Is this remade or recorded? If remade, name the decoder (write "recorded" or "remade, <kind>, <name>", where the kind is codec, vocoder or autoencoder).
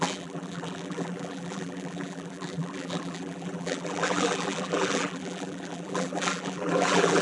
remade, vocoder, BigVGAN v2